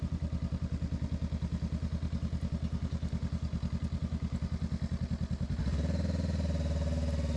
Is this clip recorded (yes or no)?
yes